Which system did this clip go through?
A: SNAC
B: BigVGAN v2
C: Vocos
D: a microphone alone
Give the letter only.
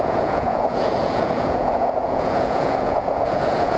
C